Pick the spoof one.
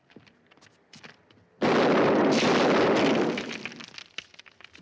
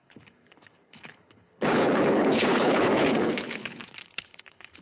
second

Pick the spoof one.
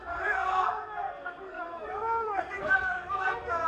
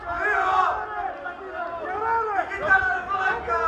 first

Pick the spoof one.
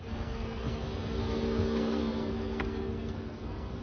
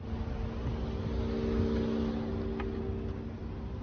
first